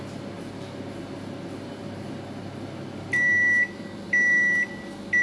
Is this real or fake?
real